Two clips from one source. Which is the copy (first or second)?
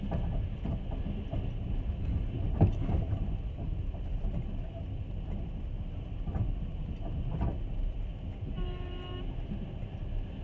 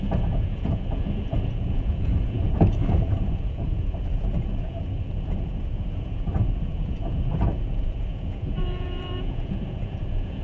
second